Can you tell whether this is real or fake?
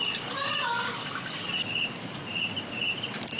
real